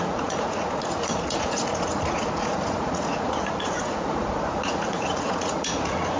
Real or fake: fake